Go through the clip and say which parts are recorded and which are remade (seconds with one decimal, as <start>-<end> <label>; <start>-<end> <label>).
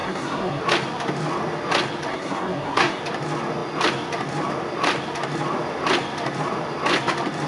0.0-0.6 remade; 0.6-2.1 recorded; 2.1-3.0 remade; 3.0-7.5 recorded